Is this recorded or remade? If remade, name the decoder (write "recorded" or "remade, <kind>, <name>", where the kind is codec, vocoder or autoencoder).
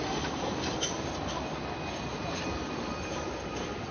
recorded